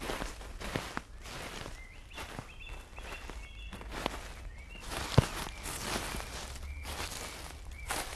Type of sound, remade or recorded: recorded